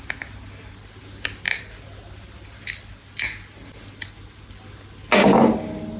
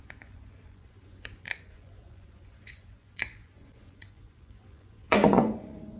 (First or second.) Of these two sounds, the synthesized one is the second